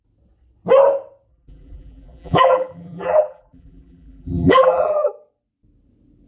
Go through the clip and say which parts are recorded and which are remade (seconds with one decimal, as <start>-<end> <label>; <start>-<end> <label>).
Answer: 0.0-1.3 recorded; 1.3-5.1 remade; 5.1-6.3 recorded